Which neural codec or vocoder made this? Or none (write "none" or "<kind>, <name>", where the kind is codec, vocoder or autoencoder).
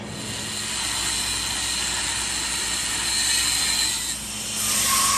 none